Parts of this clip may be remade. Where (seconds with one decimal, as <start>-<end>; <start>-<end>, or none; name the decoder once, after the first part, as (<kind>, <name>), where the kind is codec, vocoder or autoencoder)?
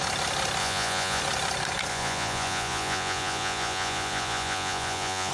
0.6-1.2 (vocoder, Vocos); 1.9-5.3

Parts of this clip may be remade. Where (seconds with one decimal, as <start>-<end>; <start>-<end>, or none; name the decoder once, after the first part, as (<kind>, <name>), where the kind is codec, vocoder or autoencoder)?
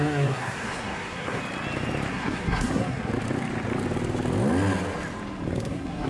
0.0-1.4 (codec, SNAC); 2.1-3.1; 5.6-6.1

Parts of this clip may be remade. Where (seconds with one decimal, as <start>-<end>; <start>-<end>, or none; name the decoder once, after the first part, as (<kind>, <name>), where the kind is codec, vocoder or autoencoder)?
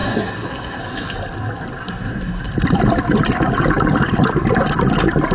0.0-0.8 (codec, SNAC); 1.8-2.5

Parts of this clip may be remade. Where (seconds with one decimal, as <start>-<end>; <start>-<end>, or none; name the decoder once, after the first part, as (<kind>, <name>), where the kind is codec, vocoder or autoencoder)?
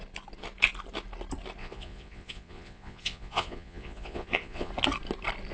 1.6-4.7 (vocoder, Vocos)